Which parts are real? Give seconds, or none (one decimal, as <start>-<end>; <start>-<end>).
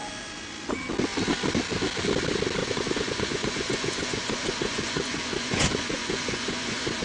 0.0-2.6